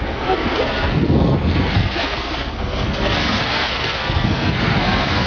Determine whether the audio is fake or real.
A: fake